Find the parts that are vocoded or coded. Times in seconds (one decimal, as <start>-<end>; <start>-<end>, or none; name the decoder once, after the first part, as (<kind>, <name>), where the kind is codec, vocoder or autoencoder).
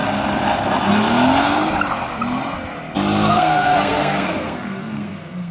3.3-5.5 (codec, SNAC)